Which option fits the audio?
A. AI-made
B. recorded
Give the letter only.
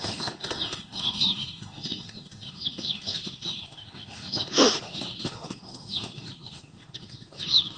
A